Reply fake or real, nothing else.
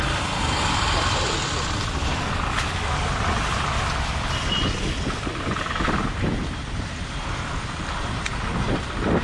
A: fake